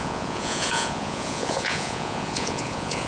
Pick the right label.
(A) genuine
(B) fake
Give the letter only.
B